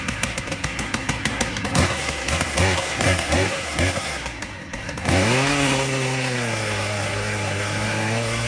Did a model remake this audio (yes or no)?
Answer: yes